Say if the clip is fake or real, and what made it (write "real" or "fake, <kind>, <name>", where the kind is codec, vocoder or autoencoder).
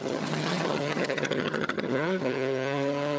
fake, vocoder, HiFi-GAN